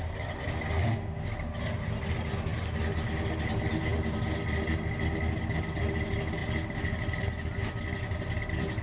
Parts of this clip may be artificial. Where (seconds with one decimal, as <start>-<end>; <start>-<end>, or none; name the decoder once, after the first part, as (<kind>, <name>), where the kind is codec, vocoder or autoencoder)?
none